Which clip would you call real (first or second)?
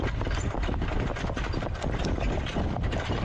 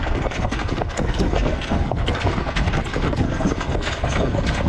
first